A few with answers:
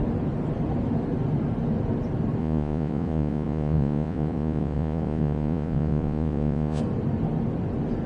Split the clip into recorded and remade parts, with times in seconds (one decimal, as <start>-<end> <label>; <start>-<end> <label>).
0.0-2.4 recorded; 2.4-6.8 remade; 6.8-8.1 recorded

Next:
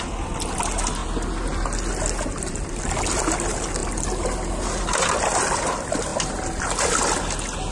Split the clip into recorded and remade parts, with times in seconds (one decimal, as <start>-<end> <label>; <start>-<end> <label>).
0.0-7.7 recorded

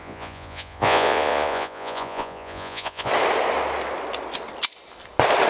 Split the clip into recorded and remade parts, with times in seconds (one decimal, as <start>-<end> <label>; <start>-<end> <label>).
0.0-3.1 remade; 3.1-5.5 recorded

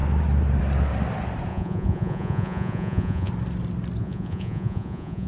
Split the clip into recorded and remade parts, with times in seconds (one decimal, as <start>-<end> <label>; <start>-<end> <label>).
0.0-1.5 recorded; 1.5-3.3 remade; 3.3-4.0 recorded; 4.0-5.3 remade

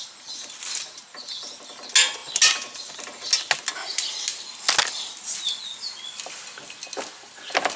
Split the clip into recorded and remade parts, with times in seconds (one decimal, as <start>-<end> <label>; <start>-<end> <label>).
0.0-7.8 recorded

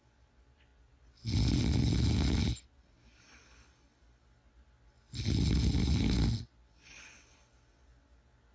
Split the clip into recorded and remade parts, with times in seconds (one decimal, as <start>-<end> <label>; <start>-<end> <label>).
0.0-8.5 recorded

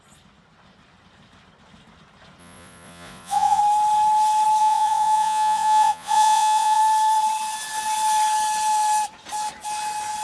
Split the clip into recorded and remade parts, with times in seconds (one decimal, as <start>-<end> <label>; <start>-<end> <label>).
0.0-2.4 recorded; 2.4-3.6 remade; 3.6-4.6 recorded; 4.6-6.8 remade; 6.8-10.2 recorded